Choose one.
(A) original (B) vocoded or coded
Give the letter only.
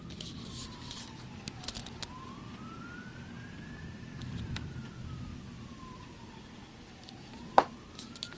A